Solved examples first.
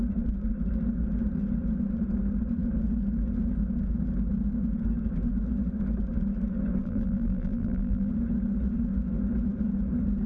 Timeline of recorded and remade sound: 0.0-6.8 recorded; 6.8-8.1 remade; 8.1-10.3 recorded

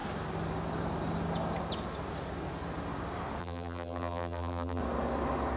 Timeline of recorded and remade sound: 0.0-3.4 recorded; 3.4-4.8 remade; 4.8-5.6 recorded

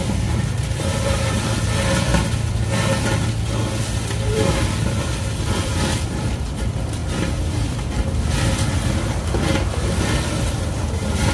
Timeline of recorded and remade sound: 0.0-2.1 remade; 2.1-4.3 recorded; 4.3-7.0 remade; 7.0-10.0 recorded; 10.0-11.3 remade